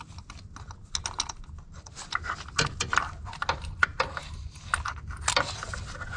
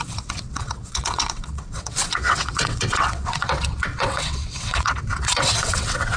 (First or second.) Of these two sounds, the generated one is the second